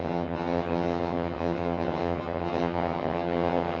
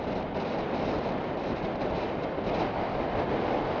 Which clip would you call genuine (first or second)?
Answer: second